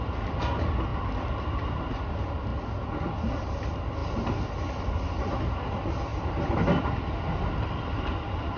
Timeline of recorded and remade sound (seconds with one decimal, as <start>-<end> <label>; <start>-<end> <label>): 0.0-8.6 recorded